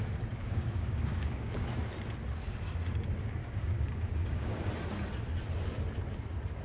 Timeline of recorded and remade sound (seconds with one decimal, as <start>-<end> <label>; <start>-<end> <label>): 0.0-0.4 recorded; 0.4-1.7 remade; 1.7-3.4 recorded; 3.4-4.7 remade; 4.7-6.6 recorded